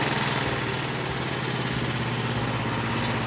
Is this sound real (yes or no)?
yes